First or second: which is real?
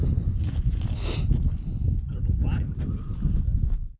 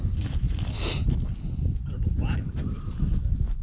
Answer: first